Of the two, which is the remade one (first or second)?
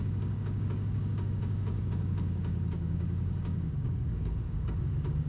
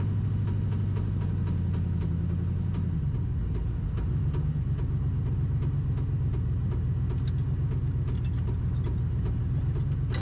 first